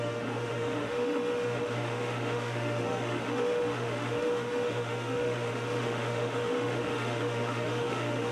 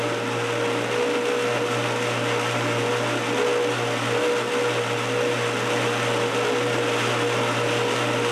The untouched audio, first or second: second